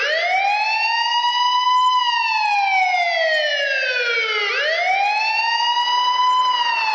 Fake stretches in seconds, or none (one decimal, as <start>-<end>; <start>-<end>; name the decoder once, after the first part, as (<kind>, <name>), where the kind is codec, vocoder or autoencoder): none